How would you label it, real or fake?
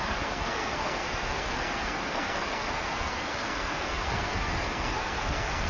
fake